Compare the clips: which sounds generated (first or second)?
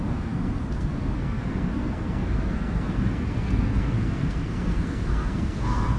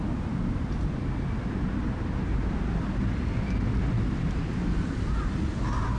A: first